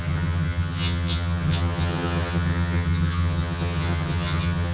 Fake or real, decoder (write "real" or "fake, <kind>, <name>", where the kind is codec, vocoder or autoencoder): fake, vocoder, HiFi-GAN